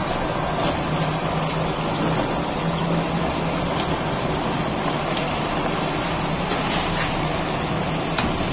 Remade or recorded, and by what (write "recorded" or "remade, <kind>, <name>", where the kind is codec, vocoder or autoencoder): recorded